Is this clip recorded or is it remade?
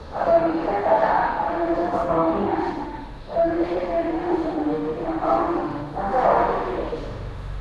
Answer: remade